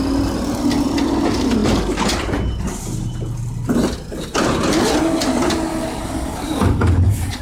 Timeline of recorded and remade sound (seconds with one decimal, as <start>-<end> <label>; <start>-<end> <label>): 0.0-5.7 recorded; 5.7-7.4 remade